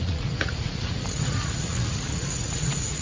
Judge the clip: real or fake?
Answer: fake